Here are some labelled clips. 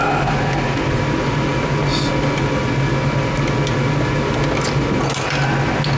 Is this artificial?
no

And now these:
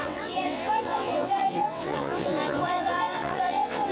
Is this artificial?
yes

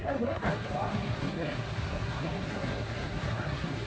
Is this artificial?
yes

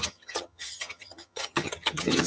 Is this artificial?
yes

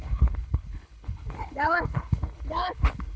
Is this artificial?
yes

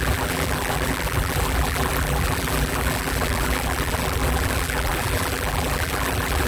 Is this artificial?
yes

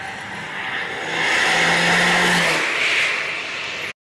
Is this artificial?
no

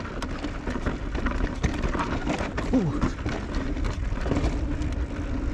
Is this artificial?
no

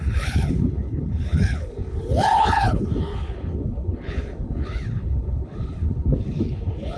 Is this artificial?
yes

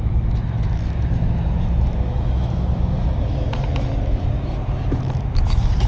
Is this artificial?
yes